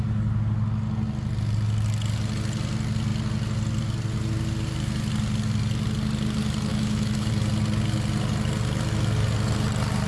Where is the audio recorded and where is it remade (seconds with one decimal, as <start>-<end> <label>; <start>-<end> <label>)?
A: 0.0-6.7 recorded; 6.7-7.3 remade; 7.3-10.1 recorded